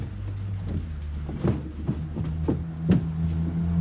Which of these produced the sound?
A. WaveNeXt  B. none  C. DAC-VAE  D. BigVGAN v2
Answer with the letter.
B